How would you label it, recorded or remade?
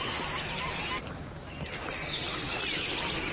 recorded